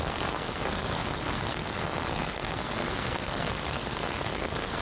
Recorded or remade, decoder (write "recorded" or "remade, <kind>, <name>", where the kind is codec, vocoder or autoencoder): remade, codec, SNAC